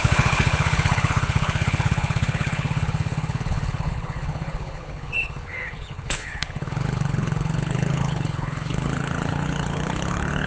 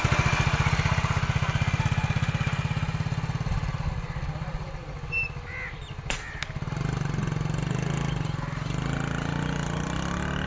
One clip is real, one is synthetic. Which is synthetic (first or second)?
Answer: first